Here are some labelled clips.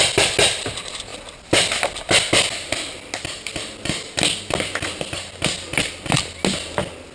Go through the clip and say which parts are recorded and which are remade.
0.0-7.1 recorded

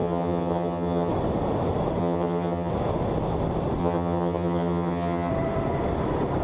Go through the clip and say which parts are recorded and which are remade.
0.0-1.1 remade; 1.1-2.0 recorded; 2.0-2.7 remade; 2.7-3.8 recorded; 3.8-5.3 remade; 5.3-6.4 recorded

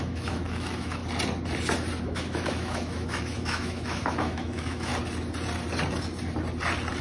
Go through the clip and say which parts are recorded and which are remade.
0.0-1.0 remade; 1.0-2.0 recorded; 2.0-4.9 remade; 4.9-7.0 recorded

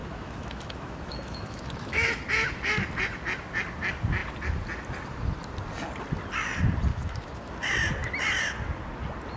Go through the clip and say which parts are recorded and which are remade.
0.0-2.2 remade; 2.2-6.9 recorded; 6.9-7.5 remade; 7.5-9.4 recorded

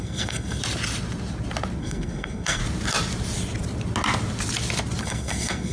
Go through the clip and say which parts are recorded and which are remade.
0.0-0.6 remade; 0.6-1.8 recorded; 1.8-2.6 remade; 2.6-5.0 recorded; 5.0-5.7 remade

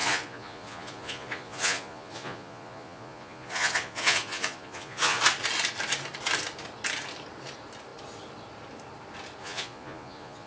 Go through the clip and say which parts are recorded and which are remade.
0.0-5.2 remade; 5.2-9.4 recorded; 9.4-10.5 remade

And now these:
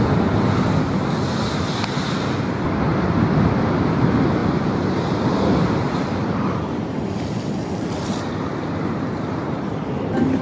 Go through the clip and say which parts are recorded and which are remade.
0.0-2.9 recorded; 2.9-3.5 remade; 3.5-4.4 recorded; 4.4-8.9 remade; 8.9-10.4 recorded

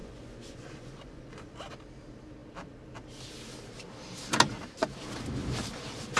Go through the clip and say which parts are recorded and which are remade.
0.0-1.6 remade; 1.6-6.2 recorded